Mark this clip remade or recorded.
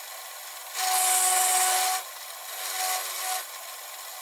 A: recorded